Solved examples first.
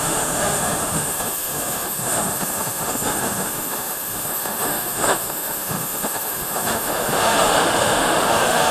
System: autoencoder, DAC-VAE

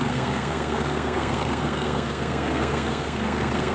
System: codec, SNAC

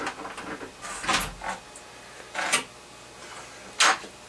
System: none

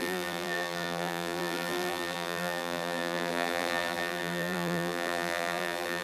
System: vocoder, BigVGAN v2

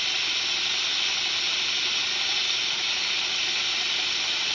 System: none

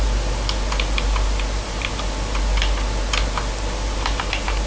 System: none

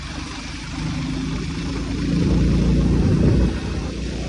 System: none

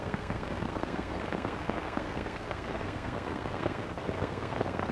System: codec, SNAC